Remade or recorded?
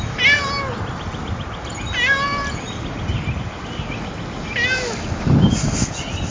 recorded